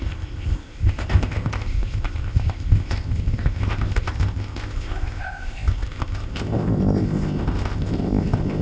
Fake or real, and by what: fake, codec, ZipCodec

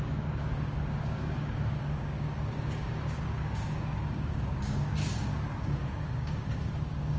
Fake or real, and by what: fake, codec, DAC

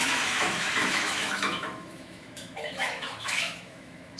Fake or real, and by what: fake, autoencoder, DAC-VAE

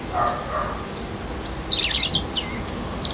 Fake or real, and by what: real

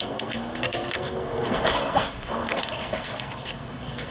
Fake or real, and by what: fake, codec, SNAC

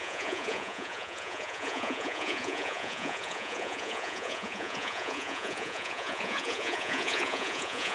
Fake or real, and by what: fake, vocoder, Vocos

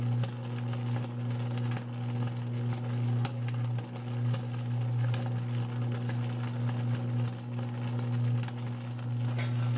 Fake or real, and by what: real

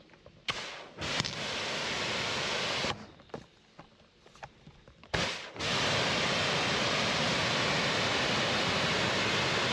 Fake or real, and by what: real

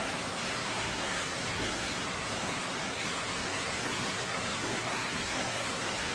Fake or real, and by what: fake, codec, SNAC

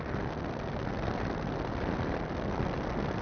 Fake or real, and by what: real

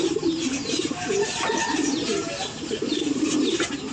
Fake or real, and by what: real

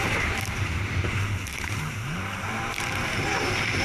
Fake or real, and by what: fake, vocoder, BigVGAN v2